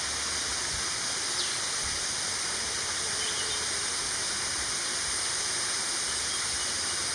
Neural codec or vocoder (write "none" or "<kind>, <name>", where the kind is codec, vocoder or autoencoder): none